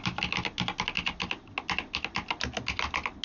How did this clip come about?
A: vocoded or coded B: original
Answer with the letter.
B